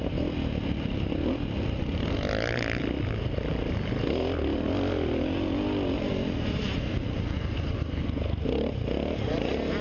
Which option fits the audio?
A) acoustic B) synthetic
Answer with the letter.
A